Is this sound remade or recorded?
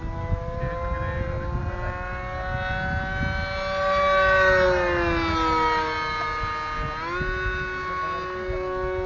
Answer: recorded